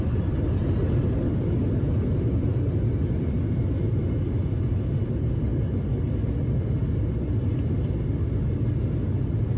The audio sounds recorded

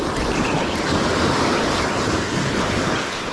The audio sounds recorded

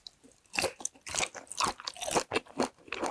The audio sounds recorded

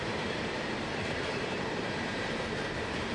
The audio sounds remade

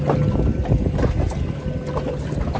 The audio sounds recorded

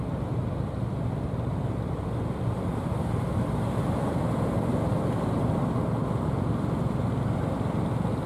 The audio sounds recorded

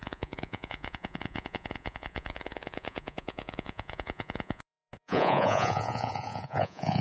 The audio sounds remade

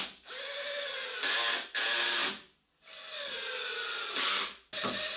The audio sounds recorded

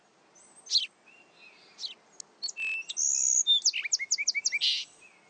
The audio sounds recorded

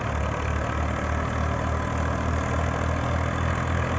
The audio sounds recorded